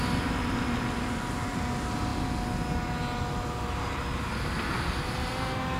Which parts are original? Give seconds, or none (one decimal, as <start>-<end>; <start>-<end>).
0.0-5.8